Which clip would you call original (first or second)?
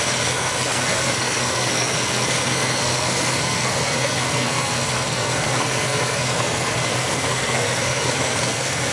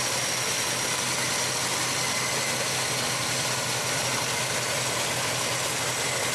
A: second